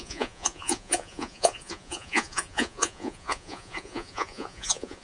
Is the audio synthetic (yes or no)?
yes